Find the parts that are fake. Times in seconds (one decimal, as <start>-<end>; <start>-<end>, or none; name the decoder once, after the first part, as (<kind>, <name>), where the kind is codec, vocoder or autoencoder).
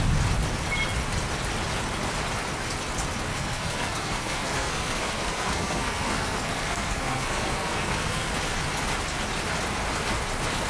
3.3-8.3 (codec, SNAC)